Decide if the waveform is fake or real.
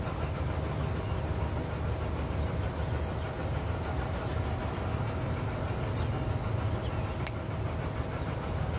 real